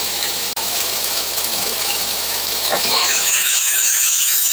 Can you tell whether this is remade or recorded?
remade